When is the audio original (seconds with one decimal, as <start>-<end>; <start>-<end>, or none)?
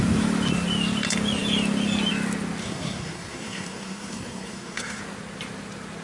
0.0-2.6; 5.0-6.0